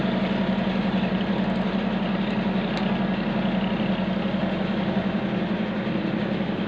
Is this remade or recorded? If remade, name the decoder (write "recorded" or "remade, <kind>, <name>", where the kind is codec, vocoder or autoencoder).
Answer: recorded